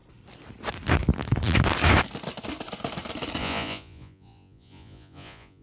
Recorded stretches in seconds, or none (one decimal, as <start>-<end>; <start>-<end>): 0.0-3.4